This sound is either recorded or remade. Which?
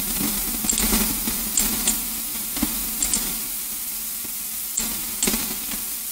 recorded